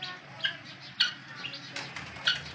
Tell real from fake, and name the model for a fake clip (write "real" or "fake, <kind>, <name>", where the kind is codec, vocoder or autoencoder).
real